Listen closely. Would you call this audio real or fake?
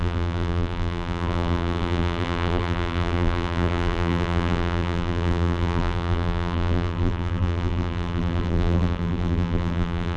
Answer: fake